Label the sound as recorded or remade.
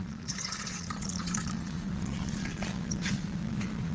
remade